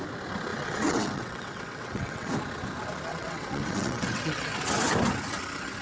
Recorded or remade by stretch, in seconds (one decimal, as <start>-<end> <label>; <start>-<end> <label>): 0.0-0.5 recorded; 0.5-2.3 remade; 2.3-3.1 recorded; 3.1-4.5 remade; 4.5-5.8 recorded